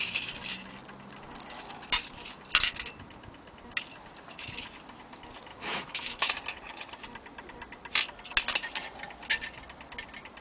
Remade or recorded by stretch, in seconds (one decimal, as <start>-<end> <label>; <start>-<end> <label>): 0.0-5.5 recorded; 5.5-6.3 remade; 6.3-10.4 recorded